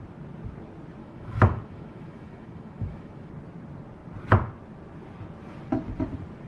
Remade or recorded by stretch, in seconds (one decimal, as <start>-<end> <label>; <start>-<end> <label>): 0.0-1.0 recorded; 1.0-3.3 remade; 3.3-6.5 recorded